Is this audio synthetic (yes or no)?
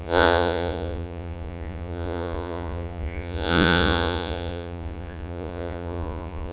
yes